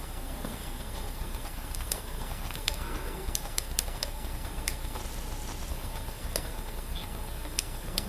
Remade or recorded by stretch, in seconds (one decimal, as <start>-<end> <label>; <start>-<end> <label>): 0.0-5.0 remade; 5.0-5.7 recorded; 5.7-8.1 remade